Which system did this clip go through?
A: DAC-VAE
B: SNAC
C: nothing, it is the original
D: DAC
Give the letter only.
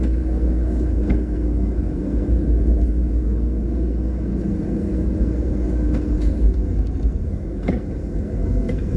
B